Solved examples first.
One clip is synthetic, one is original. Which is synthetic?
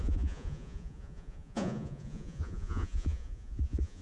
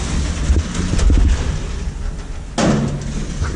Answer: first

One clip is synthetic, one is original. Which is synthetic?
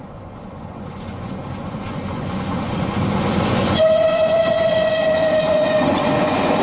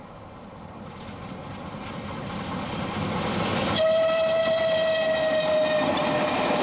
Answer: first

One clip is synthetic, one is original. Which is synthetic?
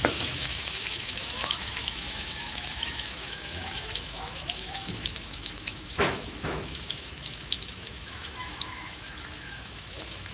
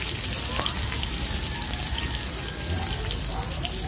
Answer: first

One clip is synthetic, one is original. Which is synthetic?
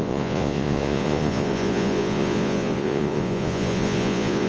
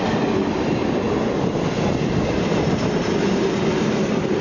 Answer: first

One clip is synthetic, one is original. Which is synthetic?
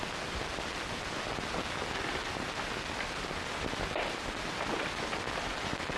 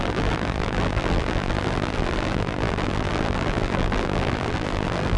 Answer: second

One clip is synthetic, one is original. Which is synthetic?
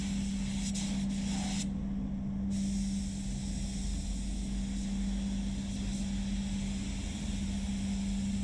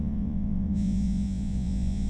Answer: second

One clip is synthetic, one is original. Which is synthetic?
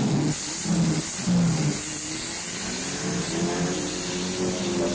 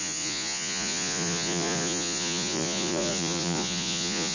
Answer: second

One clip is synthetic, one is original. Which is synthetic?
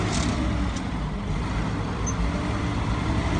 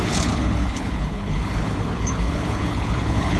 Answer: second